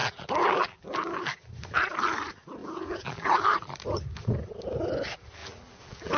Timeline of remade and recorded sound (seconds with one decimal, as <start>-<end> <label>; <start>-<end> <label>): 0.0-1.5 remade; 1.5-2.6 recorded; 2.6-3.4 remade; 3.4-5.4 recorded; 5.4-6.2 remade